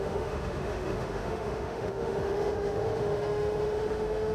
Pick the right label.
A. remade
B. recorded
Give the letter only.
A